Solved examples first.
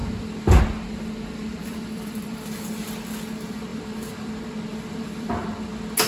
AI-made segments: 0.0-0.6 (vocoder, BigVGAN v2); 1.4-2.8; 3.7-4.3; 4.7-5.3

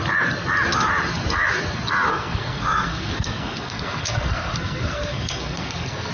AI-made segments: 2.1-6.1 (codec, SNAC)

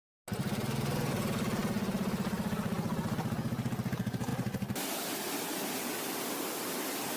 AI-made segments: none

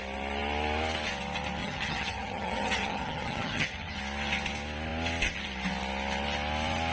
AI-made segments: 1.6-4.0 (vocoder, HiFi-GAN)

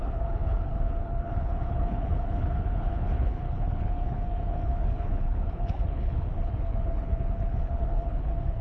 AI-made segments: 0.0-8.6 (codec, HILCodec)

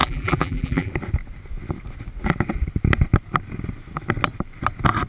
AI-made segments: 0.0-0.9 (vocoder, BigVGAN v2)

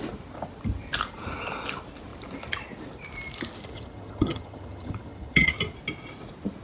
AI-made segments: 3.7-5.5 (vocoder, HiFi-GAN)

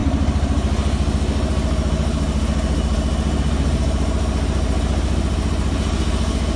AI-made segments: none